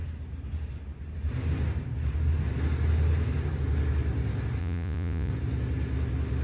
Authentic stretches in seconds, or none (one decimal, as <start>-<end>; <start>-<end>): 0.0-4.6; 5.3-6.4